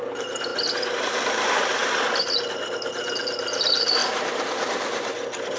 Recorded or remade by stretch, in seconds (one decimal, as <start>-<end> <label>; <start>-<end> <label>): 0.0-0.5 remade; 0.5-1.0 recorded; 1.0-1.8 remade; 1.8-2.9 recorded; 2.9-5.6 remade